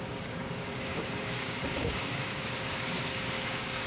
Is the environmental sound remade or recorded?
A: remade